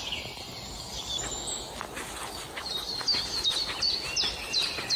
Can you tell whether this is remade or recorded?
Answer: recorded